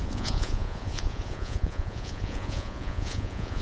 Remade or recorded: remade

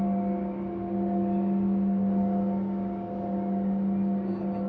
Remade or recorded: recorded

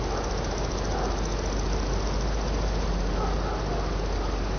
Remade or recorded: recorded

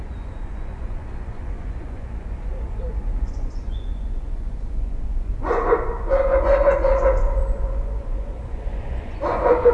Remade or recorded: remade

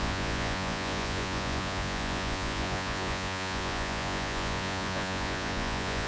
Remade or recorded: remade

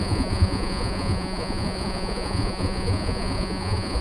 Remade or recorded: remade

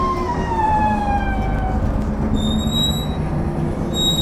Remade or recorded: recorded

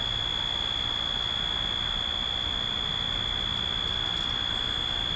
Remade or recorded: recorded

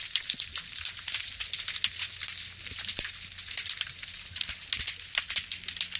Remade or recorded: recorded